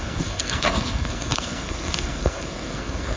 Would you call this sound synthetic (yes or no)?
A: yes